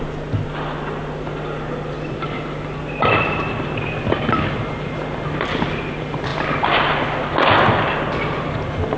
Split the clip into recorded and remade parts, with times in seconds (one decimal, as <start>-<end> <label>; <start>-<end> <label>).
0.0-9.0 recorded